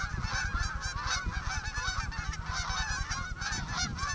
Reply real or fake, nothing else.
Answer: real